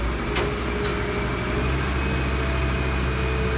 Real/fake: real